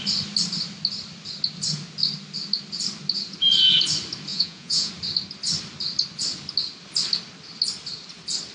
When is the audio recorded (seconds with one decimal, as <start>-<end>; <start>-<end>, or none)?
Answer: 0.0-4.3; 4.9-8.5